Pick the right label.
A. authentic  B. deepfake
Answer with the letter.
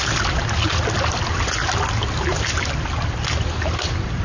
A